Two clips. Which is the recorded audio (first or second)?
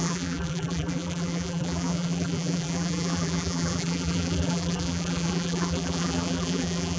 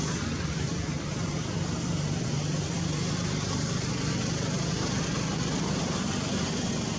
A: second